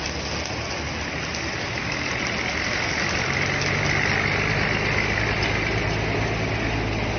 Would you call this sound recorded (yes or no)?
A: yes